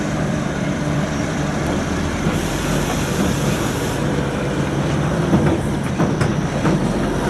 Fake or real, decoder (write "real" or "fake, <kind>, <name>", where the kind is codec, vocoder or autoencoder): fake, vocoder, BigVGAN v2